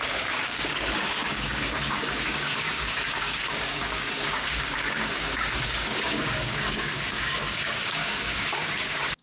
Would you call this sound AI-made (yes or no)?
yes